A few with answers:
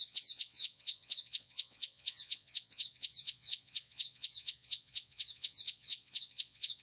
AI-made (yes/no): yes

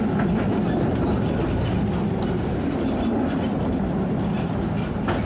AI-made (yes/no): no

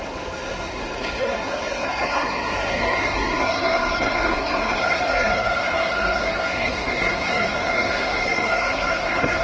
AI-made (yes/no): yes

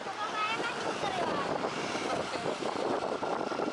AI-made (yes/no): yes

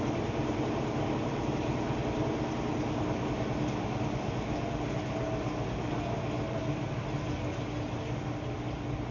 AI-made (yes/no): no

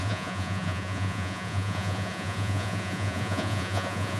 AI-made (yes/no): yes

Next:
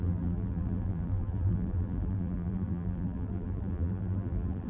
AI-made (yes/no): yes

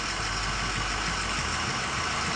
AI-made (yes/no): no